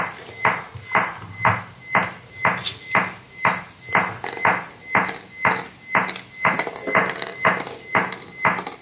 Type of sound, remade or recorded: recorded